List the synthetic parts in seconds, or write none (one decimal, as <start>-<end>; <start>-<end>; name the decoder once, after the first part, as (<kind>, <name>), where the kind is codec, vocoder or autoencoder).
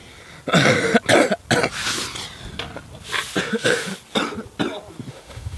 3.4-3.9 (autoencoder, DAC-VAE); 5.1-5.6